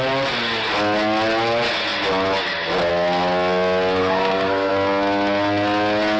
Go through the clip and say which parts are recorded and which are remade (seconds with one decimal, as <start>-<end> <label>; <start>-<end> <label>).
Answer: 0.0-4.0 recorded; 4.0-4.7 remade; 4.7-6.2 recorded